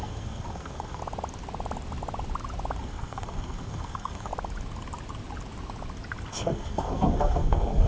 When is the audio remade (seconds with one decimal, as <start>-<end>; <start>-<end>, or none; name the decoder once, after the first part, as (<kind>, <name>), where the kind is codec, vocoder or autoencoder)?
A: 0.0-1.0 (codec, SNAC); 2.8-4.3; 6.3-7.9